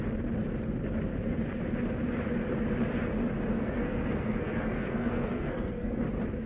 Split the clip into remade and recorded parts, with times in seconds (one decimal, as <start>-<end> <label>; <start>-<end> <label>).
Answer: 0.0-3.5 recorded; 3.5-6.0 remade; 6.0-6.5 recorded

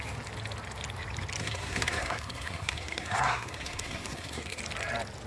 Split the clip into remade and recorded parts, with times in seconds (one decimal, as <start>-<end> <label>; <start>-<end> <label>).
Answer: 0.0-1.4 recorded; 1.4-4.6 remade; 4.6-5.3 recorded

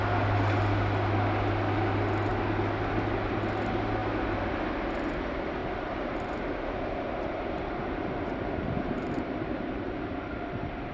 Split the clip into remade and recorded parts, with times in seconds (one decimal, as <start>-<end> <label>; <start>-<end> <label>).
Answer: 0.0-5.6 recorded; 5.6-10.9 remade